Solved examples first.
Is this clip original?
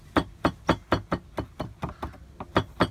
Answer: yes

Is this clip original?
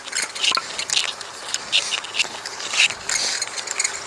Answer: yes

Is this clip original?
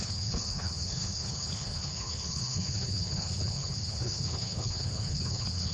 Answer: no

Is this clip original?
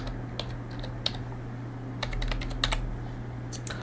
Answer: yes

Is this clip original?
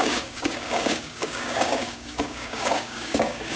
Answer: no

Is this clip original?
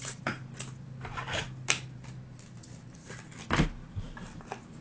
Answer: yes